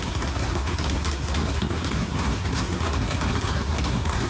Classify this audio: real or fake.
fake